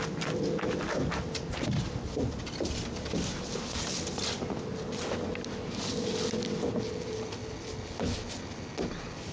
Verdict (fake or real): real